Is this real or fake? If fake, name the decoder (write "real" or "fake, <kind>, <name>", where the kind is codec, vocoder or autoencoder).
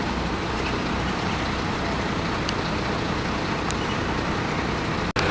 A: real